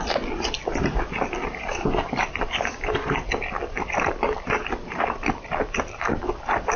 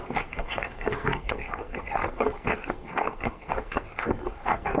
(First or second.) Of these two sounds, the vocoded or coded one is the second